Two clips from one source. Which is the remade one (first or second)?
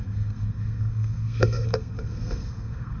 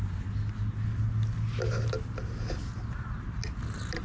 first